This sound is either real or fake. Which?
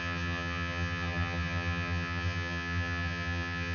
fake